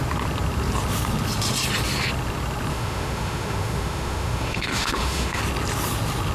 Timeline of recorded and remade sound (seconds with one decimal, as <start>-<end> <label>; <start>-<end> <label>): 0.0-2.7 recorded; 2.7-5.4 remade; 5.4-6.3 recorded